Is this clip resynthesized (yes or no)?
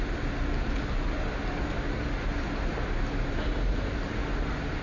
no